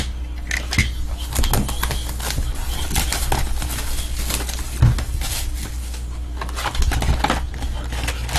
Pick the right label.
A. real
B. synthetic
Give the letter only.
A